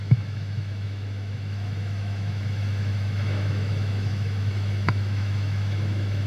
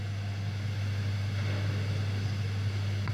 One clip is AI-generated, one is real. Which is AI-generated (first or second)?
first